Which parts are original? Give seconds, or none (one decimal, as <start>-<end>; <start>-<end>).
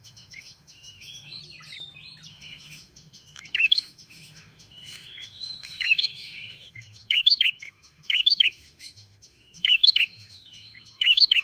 1.4-2.3